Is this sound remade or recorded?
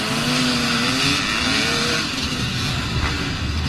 recorded